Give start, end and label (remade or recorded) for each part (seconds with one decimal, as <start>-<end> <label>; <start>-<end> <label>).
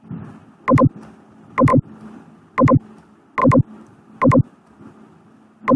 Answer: 0.0-5.8 recorded